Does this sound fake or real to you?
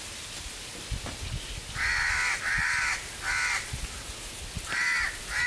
real